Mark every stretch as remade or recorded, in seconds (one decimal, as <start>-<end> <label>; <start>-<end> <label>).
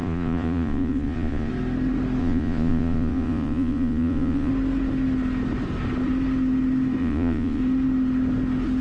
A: 0.0-1.5 remade; 1.5-2.2 recorded; 2.2-4.5 remade; 4.5-7.0 recorded; 7.0-7.6 remade; 7.6-8.8 recorded